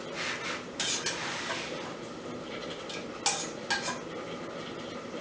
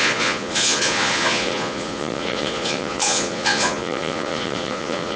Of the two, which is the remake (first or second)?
second